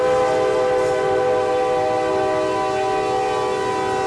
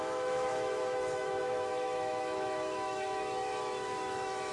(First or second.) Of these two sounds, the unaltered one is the first